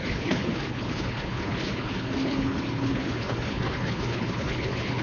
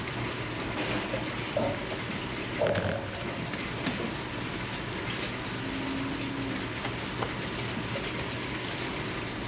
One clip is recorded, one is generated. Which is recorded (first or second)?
second